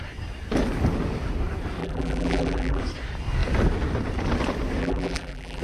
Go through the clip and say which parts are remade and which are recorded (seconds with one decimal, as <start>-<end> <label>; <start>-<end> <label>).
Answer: 0.0-1.8 recorded; 1.8-2.8 remade; 2.8-4.8 recorded; 4.8-5.6 remade